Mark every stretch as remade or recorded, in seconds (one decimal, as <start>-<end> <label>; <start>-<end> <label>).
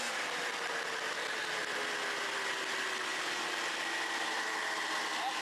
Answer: 0.0-5.4 recorded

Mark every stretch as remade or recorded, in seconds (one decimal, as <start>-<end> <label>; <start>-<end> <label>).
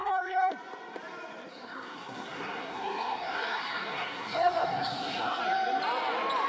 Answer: 0.0-0.5 remade; 0.5-1.5 recorded; 1.5-5.4 remade; 5.4-6.5 recorded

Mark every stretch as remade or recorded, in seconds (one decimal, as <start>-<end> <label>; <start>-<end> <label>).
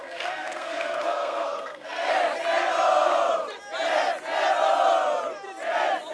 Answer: 0.0-2.1 remade; 2.1-6.1 recorded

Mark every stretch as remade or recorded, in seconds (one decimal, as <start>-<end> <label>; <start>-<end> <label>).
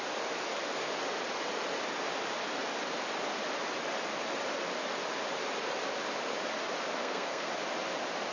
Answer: 0.0-7.0 recorded; 7.0-7.5 remade; 7.5-8.3 recorded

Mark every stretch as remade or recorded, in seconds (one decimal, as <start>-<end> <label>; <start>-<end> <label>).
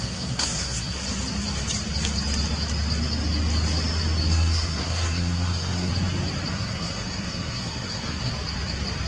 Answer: 0.0-1.0 remade; 1.0-4.3 recorded; 4.3-5.9 remade; 5.9-6.5 recorded; 6.5-8.3 remade; 8.3-9.1 recorded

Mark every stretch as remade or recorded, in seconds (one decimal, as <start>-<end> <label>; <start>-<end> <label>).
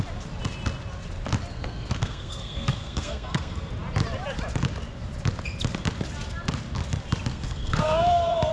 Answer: 0.0-1.5 recorded; 1.5-3.7 remade; 3.7-7.3 recorded; 7.3-8.5 remade